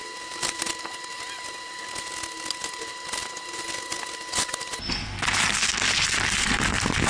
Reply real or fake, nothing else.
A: real